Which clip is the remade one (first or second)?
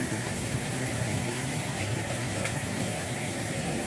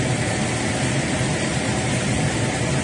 first